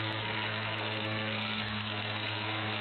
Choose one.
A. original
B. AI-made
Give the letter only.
B